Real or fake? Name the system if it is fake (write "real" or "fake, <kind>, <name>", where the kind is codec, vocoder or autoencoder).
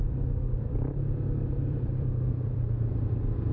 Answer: fake, vocoder, BigVGAN v2